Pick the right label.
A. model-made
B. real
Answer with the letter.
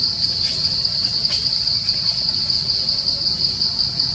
B